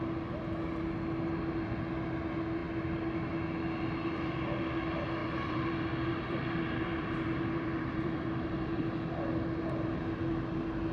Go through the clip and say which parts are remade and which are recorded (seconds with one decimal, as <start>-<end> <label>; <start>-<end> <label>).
0.0-5.2 recorded; 5.2-8.8 remade; 8.8-10.9 recorded